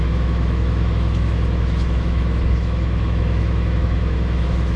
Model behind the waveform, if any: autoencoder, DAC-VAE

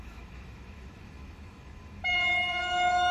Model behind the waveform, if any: autoencoder, DAC-VAE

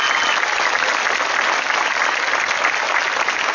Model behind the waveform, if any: none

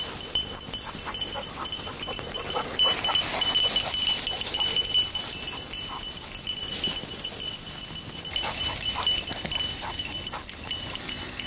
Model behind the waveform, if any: vocoder, BigVGAN v2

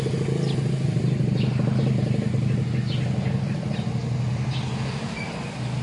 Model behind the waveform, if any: none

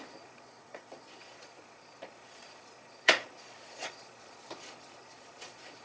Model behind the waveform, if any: vocoder, Vocos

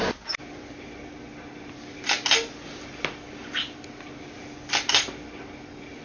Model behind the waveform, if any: none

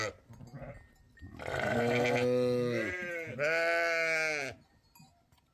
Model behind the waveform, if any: none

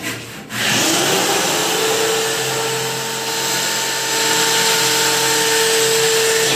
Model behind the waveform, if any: none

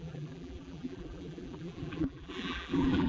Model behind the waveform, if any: vocoder, BigVGAN v2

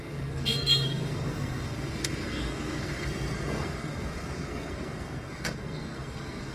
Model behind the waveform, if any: codec, SNAC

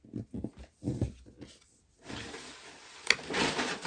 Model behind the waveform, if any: none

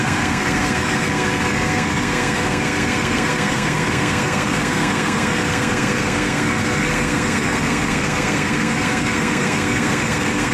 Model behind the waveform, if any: codec, SNAC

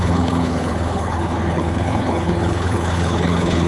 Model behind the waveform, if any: codec, HILCodec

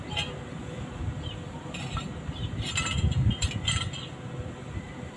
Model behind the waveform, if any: vocoder, BigVGAN v2